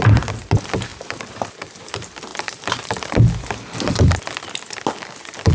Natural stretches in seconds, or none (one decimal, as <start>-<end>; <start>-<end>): 0.0-0.9; 1.9-2.3; 3.1-5.5